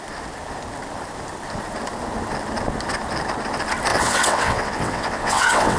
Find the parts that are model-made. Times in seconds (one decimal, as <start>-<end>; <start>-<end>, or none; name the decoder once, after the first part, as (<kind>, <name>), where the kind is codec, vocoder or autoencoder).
3.9-5.8 (vocoder, WaveNeXt)